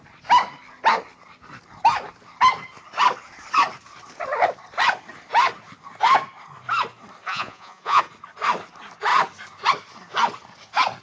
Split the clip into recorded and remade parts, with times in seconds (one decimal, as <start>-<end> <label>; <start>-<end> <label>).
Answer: 0.0-7.2 recorded; 7.2-8.0 remade; 8.0-11.0 recorded